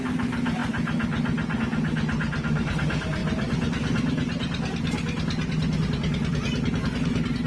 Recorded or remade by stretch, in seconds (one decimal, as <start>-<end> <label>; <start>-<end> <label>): 0.0-7.5 recorded

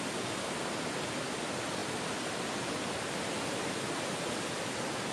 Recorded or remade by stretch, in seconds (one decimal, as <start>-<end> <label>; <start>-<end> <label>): 0.0-5.1 recorded